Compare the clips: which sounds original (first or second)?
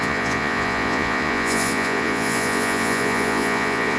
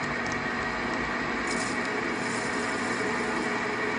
second